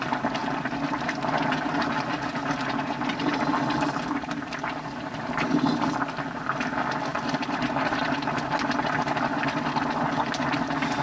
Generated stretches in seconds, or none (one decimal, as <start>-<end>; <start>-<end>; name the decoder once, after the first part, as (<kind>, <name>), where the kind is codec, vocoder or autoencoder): 7.1-7.7 (vocoder, BigVGAN v2)